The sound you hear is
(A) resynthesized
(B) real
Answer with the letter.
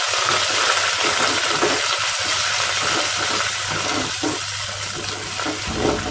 B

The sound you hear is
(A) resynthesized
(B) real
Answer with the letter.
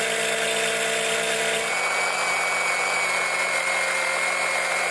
B